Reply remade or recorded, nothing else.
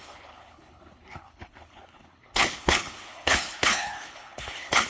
remade